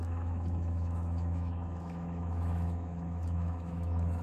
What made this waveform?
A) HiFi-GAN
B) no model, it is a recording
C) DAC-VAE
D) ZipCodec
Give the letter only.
C